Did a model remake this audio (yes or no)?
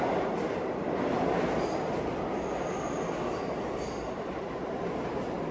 no